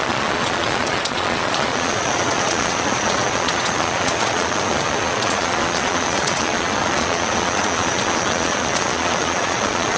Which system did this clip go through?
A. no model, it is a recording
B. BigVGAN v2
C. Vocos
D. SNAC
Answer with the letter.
C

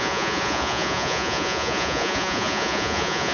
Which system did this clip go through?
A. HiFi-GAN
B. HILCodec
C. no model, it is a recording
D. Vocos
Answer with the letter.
D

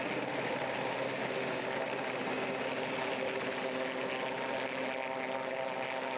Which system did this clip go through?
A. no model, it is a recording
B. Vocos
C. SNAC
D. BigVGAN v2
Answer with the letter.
A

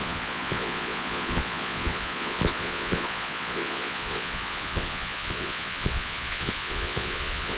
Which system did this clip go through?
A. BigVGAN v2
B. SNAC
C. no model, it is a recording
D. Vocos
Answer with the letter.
D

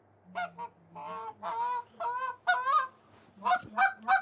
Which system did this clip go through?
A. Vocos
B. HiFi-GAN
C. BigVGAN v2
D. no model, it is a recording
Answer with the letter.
D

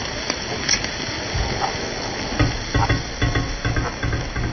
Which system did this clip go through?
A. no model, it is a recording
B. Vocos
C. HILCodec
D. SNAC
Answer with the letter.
A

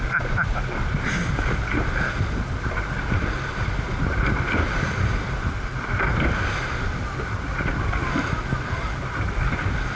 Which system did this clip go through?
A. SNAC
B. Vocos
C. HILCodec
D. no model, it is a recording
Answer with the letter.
D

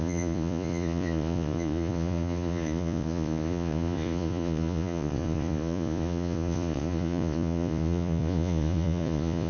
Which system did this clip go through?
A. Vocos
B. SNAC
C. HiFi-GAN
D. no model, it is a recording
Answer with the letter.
A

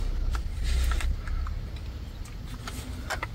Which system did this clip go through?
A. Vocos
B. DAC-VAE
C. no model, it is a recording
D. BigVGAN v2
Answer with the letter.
C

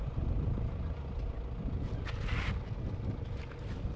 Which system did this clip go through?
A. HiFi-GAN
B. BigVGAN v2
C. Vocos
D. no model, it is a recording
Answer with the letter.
D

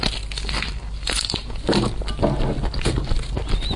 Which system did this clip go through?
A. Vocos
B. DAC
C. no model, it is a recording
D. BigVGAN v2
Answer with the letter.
C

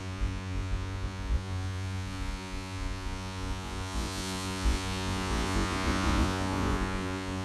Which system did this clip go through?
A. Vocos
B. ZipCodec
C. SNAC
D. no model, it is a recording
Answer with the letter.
A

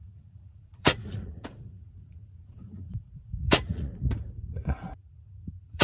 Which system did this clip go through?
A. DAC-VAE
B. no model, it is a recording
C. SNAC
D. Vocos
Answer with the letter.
D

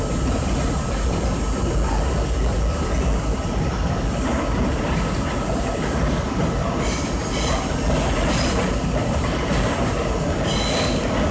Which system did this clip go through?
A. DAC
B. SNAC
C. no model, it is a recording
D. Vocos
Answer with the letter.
C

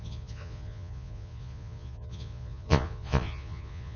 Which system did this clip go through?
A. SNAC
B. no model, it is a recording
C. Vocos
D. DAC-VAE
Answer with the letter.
C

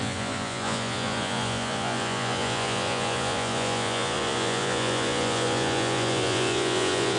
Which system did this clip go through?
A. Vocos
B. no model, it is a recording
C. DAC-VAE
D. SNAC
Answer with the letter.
A